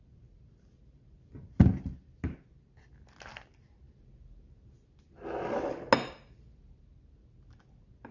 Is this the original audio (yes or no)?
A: yes